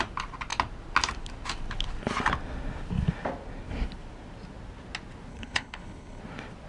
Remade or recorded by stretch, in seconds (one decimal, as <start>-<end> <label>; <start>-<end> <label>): 0.0-5.3 recorded; 5.3-6.2 remade; 6.2-6.7 recorded